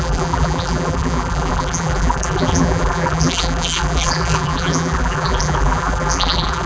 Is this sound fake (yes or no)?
yes